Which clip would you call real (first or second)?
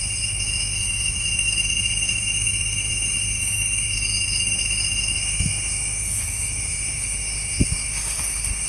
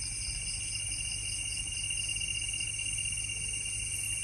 second